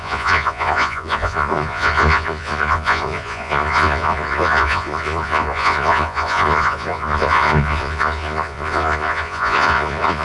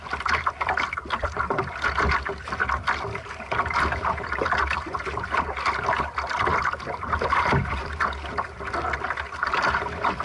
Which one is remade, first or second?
first